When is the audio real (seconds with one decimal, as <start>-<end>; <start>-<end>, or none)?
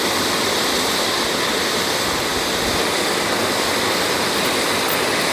0.0-5.3